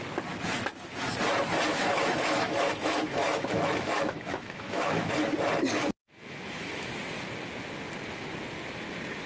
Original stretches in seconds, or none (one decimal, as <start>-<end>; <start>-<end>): 0.0-1.7; 5.1-6.0; 6.9-9.3